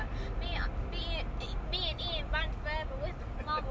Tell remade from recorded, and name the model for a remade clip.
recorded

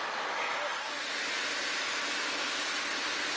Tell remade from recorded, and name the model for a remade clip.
recorded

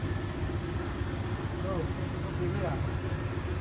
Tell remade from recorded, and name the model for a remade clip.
recorded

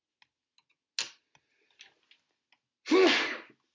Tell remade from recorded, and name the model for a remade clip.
recorded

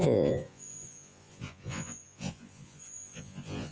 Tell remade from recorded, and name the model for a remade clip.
remade, vocoder, Vocos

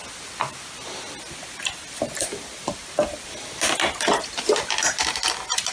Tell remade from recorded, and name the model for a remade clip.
recorded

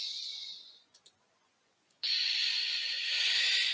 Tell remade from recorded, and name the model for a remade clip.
remade, vocoder, Vocos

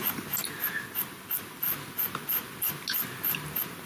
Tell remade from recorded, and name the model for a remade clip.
recorded